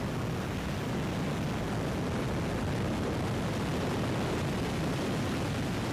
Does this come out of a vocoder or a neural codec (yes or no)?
no